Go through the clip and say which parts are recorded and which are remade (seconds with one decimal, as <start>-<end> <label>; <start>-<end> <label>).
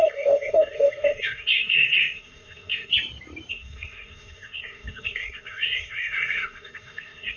0.0-2.9 remade; 2.9-3.5 recorded; 3.5-7.4 remade